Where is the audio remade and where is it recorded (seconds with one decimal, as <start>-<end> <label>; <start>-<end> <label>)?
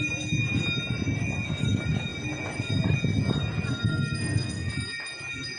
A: 0.0-3.9 recorded; 3.9-4.7 remade; 4.7-5.6 recorded